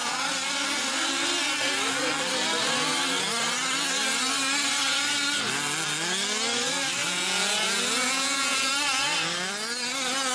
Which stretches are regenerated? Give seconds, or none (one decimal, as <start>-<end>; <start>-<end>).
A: 7.0-8.7